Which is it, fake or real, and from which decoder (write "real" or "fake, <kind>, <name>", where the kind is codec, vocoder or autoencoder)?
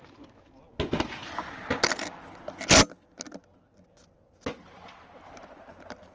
real